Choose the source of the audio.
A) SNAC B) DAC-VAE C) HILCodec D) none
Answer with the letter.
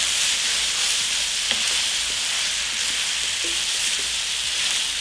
D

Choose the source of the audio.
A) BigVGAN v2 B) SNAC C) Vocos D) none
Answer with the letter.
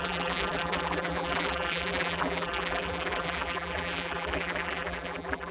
A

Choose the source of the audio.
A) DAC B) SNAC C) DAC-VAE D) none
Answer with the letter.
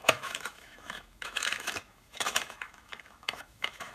C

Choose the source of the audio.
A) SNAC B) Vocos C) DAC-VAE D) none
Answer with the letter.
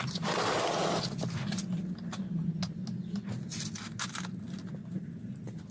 D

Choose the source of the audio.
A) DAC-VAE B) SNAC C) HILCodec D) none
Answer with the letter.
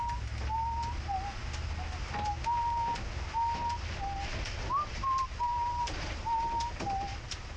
D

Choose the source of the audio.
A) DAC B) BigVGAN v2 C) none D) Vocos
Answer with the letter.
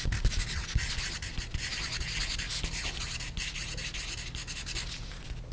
C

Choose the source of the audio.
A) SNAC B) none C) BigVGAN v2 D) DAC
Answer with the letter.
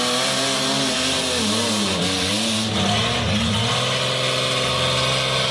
B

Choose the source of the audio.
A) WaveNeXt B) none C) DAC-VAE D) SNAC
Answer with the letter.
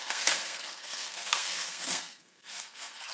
D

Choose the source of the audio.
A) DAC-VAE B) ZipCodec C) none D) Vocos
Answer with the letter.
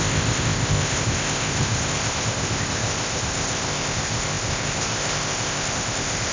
B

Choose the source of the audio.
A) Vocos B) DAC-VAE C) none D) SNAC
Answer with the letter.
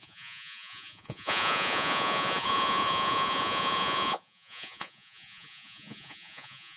A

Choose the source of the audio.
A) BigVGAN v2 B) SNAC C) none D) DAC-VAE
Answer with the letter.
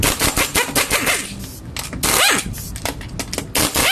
C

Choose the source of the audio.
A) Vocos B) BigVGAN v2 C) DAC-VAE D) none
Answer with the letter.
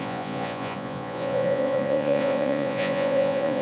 A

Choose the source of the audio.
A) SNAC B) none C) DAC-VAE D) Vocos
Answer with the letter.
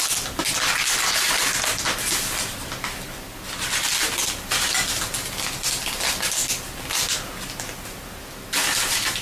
B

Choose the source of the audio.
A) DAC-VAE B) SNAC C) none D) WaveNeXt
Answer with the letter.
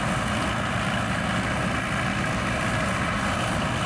C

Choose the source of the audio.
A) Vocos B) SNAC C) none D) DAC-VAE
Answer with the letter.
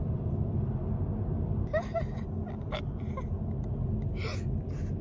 C